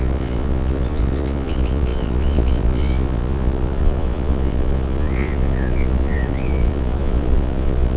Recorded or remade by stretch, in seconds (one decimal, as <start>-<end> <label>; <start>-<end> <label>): 0.0-8.0 remade